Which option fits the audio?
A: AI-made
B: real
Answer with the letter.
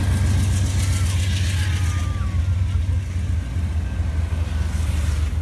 B